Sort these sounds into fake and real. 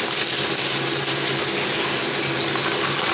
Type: real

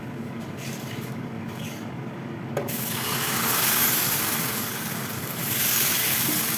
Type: fake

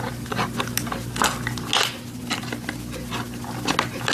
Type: real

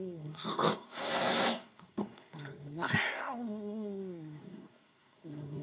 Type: fake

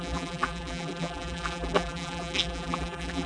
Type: fake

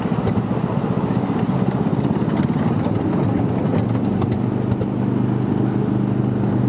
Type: real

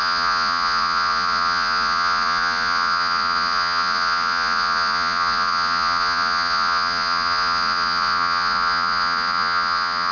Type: fake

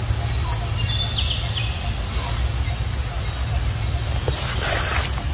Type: real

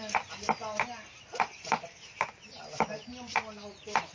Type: real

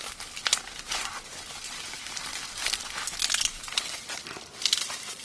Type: real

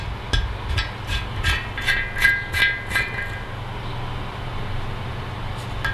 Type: real